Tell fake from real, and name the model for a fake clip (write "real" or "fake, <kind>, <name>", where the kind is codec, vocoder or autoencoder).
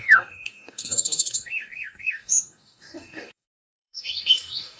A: fake, codec, DAC